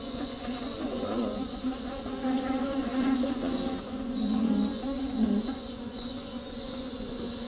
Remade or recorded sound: remade